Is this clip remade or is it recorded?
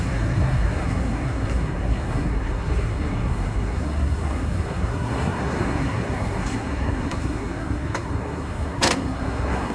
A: remade